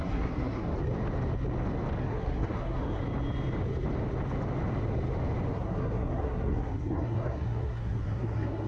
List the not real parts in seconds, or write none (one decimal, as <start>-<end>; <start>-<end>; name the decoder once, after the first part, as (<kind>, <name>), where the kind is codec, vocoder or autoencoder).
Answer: 0.0-0.7 (codec, SNAC); 2.0-3.0; 5.5-8.7